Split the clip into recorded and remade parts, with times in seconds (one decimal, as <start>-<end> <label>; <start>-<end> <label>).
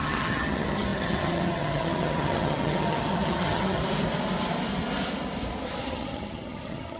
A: 0.0-3.8 remade; 3.8-5.8 recorded; 5.8-7.0 remade